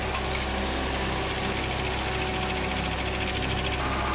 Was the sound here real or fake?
real